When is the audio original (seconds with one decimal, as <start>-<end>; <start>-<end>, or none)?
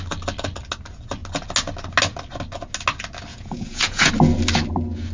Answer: 0.0-3.3; 4.1-5.1